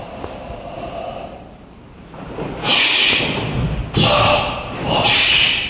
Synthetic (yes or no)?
no